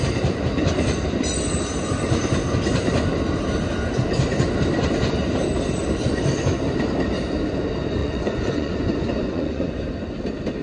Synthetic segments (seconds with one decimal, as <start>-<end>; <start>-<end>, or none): 8.0-9.7